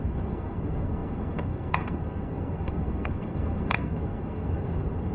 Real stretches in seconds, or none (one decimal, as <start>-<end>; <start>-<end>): none